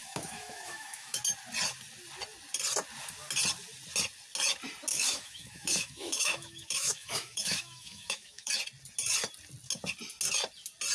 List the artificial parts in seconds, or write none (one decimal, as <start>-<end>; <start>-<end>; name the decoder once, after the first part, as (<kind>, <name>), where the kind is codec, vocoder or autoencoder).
0.0-1.2 (autoencoder, DAC-VAE); 4.9-8.5

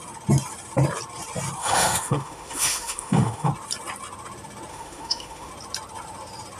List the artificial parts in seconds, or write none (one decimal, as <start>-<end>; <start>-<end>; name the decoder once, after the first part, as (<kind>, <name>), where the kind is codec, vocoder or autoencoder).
1.6-3.5 (autoencoder, DAC-VAE); 4.7-5.5

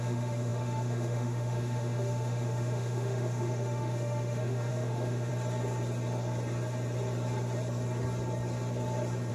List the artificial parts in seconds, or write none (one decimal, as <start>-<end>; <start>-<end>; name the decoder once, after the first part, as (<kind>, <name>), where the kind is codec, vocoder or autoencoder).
0.0-5.3 (autoencoder, DAC-VAE)

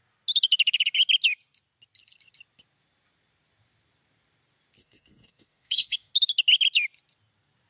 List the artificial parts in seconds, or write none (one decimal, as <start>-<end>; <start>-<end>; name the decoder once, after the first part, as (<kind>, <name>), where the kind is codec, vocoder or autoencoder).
4.8-6.1 (autoencoder, DAC-VAE)

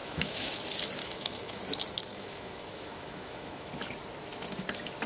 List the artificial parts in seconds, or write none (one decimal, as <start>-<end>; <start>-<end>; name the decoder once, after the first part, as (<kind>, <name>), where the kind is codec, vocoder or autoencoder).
0.0-0.6 (autoencoder, DAC-VAE); 1.0-1.6; 2.1-3.7

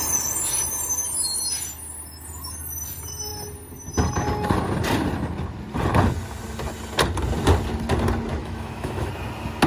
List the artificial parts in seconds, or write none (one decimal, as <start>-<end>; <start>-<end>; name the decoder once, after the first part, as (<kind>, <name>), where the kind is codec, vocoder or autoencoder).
8.4-9.1 (autoencoder, DAC-VAE)

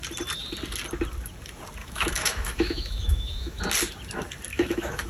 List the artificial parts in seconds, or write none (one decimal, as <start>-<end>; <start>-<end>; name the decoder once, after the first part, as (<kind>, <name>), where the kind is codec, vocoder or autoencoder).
1.8-3.6 (autoencoder, DAC-VAE); 4.5-5.1